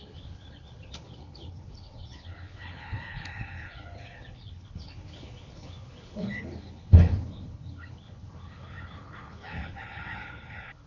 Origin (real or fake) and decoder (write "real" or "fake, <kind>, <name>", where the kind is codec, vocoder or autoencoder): fake, codec, HILCodec